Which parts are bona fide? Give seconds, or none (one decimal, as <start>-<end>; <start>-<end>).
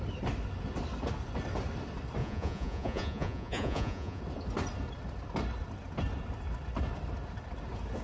0.0-2.2; 4.2-8.0